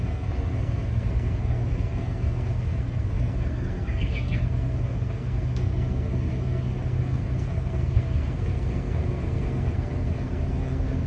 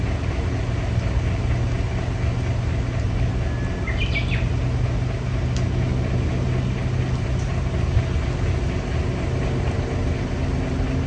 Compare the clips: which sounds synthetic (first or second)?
first